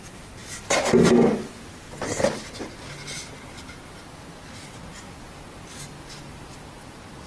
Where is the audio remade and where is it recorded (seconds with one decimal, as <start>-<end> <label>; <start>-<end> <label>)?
0.0-7.3 recorded